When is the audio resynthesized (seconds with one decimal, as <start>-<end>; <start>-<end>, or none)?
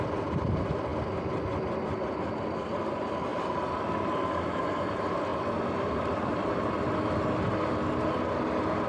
none